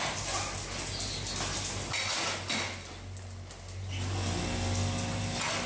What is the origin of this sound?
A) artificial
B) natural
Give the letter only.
B